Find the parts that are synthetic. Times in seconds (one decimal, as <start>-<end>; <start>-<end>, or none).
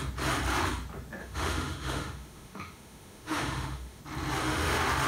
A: 1.2-4.0; 4.4-5.1